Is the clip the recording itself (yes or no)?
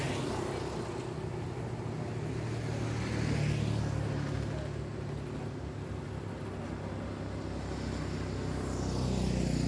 yes